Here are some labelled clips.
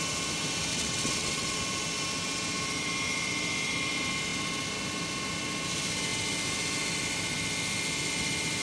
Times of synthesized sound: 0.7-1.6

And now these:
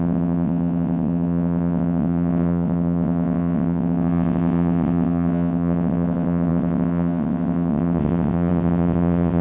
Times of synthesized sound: 0.0-9.4

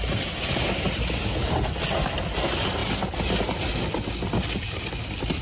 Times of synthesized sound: none

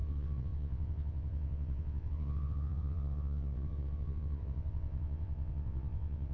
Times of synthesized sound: 0.0-6.3

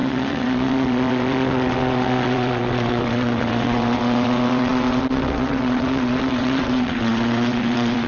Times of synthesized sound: 0.0-8.1

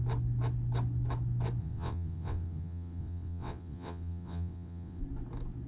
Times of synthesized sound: 1.6-5.0

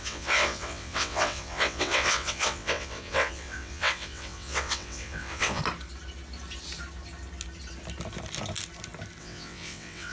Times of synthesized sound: 0.0-5.6; 9.2-10.1

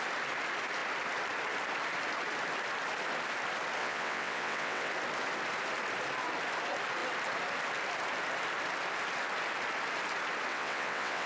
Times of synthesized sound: 3.8-4.9; 10.5-11.3